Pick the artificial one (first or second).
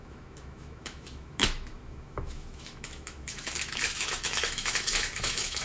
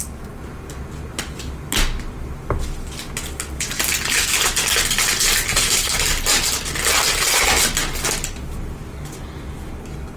first